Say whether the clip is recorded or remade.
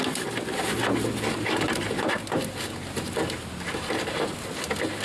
recorded